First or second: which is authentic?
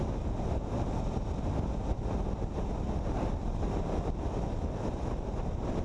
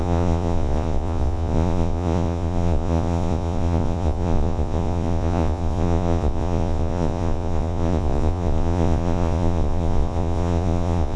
first